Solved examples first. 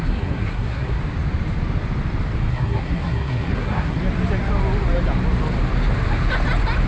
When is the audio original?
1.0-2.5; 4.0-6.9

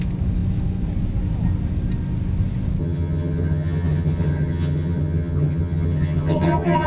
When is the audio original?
0.0-2.8

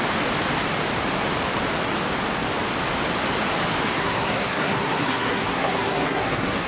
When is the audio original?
0.0-4.0

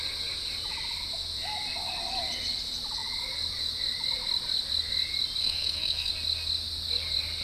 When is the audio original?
0.0-5.4; 6.1-7.4

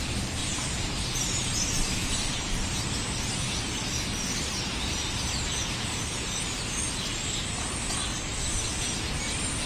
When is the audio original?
0.0-0.4; 2.1-5.6; 6.1-8.1; 9.1-9.7